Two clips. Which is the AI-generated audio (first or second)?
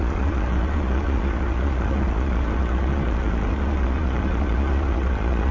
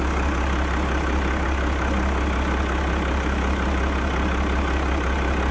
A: first